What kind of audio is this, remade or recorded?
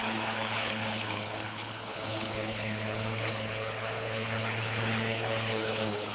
remade